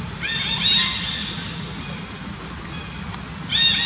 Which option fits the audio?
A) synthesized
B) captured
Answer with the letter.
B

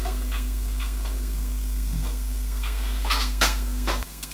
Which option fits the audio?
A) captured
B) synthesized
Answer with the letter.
B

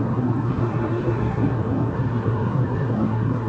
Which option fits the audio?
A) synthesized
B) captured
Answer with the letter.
A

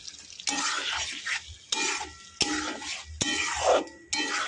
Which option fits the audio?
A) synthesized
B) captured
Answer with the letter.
B